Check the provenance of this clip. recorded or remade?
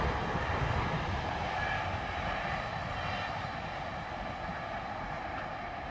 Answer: recorded